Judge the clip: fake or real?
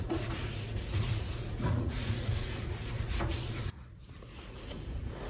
fake